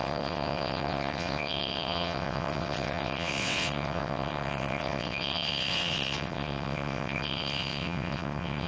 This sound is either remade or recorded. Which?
remade